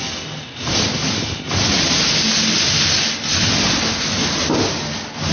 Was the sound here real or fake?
real